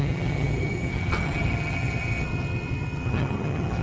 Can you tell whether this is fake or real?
fake